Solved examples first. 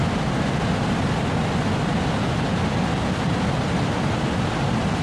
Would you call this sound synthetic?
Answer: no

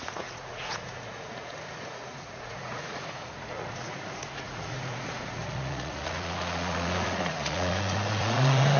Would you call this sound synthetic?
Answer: yes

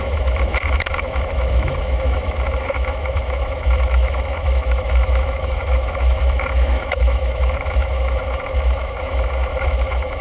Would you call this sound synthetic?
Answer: yes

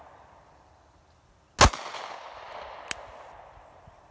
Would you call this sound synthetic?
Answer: no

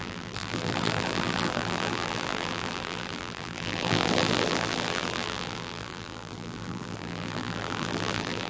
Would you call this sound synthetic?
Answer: yes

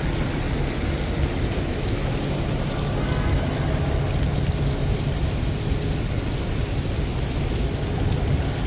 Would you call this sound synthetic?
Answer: no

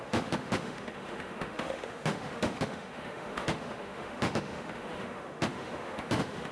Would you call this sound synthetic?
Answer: yes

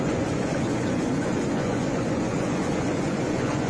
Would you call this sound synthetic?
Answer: yes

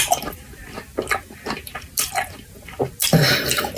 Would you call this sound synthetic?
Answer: no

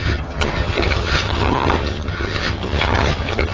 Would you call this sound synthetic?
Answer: yes